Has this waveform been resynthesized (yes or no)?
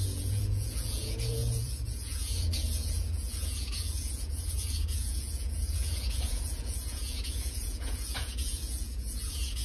yes